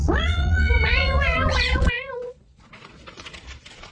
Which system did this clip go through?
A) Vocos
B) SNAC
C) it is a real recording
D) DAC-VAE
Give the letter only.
A